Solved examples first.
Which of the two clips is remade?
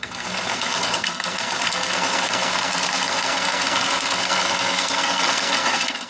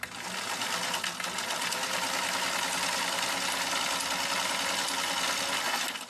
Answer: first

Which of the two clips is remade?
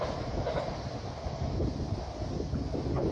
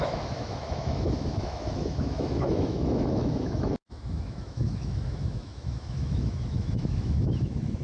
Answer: second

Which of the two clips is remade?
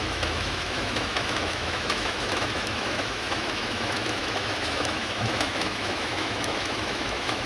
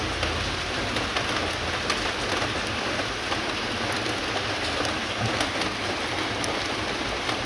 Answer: first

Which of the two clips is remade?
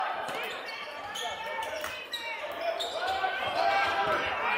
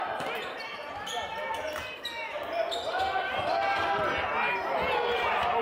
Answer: first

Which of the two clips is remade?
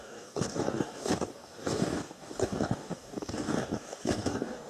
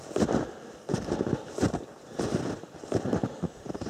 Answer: first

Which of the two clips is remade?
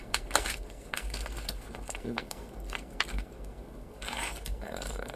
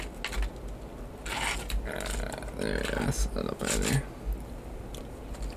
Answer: first